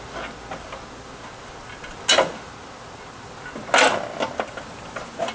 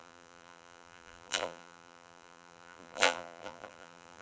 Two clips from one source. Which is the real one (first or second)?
first